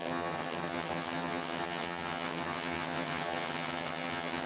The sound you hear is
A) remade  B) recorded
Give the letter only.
A